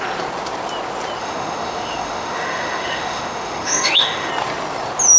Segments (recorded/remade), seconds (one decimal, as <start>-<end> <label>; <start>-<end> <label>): 0.0-1.2 recorded; 1.2-4.3 remade; 4.3-5.2 recorded